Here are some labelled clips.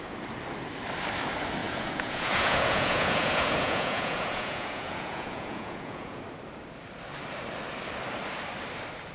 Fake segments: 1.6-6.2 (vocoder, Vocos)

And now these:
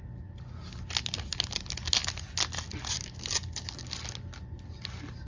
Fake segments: none

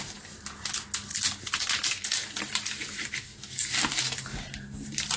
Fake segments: none

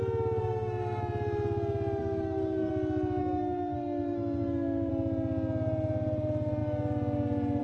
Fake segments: 0.4-1.0 (codec, SNAC); 2.0-2.7; 3.2-4.9

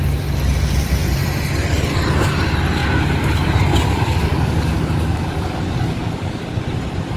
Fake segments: 2.8-6.4 (codec, DAC)

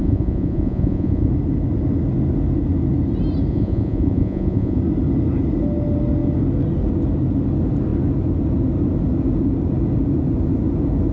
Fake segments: 0.0-1.3 (vocoder, Vocos); 3.5-4.8

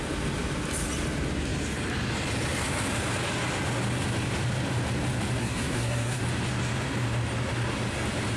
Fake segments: 5.4-6.2 (codec, SNAC)

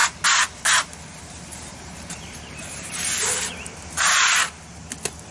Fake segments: 1.1-4.3 (vocoder, BigVGAN v2)